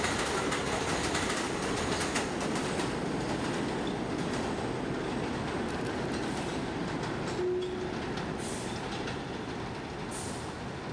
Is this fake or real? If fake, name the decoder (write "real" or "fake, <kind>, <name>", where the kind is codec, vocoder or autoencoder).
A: real